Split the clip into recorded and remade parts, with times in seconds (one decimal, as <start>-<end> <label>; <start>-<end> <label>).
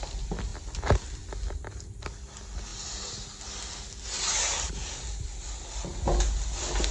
0.0-6.9 recorded